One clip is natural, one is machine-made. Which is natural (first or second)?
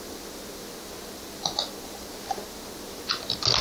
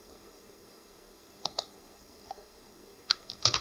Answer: first